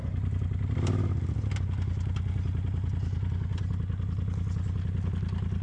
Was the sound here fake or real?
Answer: real